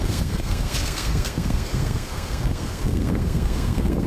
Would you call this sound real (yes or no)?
no